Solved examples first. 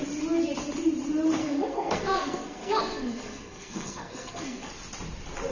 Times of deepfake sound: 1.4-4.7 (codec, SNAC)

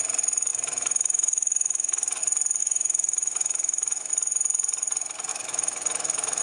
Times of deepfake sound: 0.5-2.2 (autoencoder, DAC-VAE); 2.6-4.1; 5.3-6.4

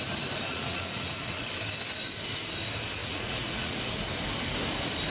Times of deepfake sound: 0.5-1.5 (vocoder, Vocos); 3.0-3.8

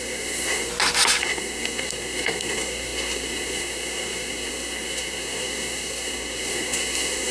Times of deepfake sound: 0.0-0.7 (codec, SNAC); 1.2-7.3

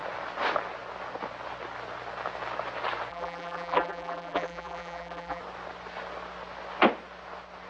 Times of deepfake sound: 3.1-5.4 (vocoder, BigVGAN v2)

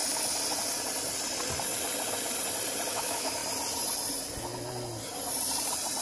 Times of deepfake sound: 2.9-3.4 (autoencoder, DAC-VAE)

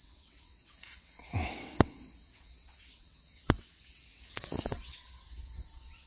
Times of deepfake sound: 0.0-6.1 (vocoder, WaveNeXt)

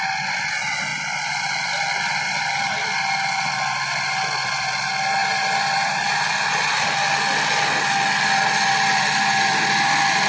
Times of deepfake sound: 5.2-6.3 (vocoder, BigVGAN v2)